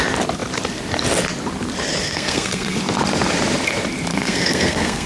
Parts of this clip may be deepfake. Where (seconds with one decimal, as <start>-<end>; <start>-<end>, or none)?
2.0-2.8; 4.1-5.1